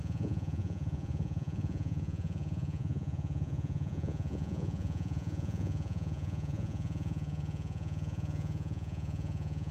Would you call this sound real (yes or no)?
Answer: no